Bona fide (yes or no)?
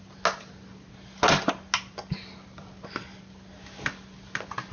yes